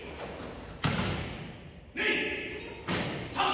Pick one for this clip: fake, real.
real